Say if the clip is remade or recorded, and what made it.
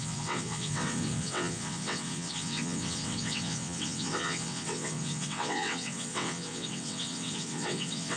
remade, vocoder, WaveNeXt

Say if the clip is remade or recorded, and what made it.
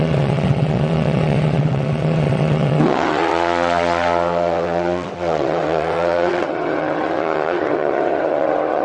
remade, vocoder, WaveNeXt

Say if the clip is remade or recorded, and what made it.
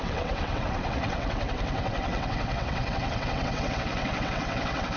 remade, vocoder, WaveNeXt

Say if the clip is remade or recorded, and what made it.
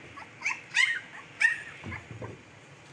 recorded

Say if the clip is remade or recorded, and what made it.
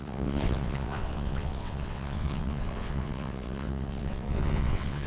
remade, vocoder, WaveNeXt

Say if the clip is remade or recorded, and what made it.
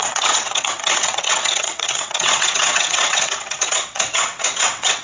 remade, vocoder, WaveNeXt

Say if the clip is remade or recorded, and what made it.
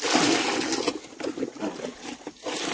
recorded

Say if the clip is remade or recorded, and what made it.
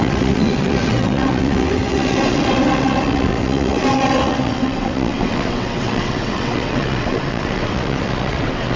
remade, vocoder, WaveNeXt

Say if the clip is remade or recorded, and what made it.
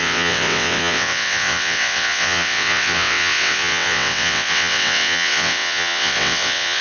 remade, vocoder, WaveNeXt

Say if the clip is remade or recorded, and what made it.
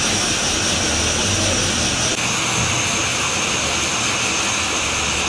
recorded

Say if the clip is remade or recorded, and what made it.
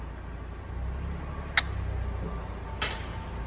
recorded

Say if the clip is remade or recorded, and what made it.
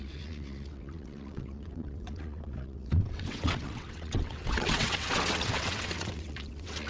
remade, vocoder, WaveNeXt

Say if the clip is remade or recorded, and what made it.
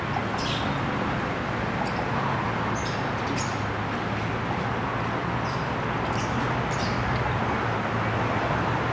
recorded